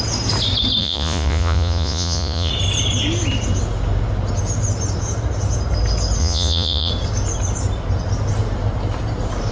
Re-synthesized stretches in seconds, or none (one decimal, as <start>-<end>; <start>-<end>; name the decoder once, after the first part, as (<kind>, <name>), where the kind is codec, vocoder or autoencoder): 0.8-2.5 (vocoder, Vocos); 6.2-6.9